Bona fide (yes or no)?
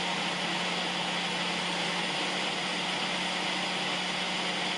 yes